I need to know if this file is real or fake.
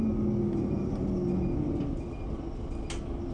real